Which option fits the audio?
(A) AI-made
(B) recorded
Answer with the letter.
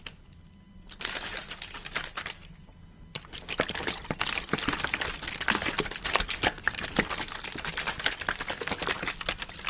B